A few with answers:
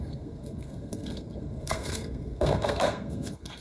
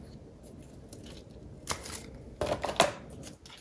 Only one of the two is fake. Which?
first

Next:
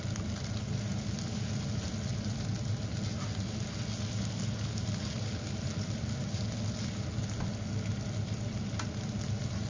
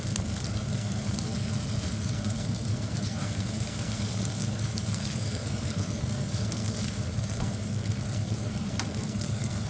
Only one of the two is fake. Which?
second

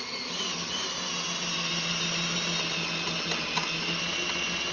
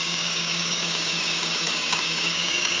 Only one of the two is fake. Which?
second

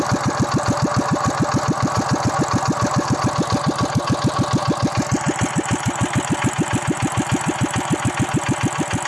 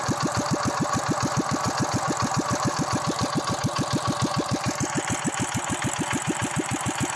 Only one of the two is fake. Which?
second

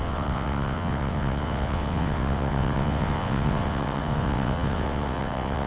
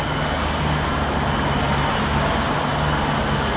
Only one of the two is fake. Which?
first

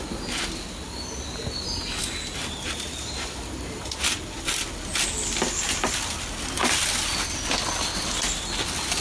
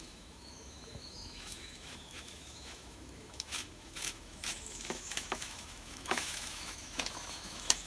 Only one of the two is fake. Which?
second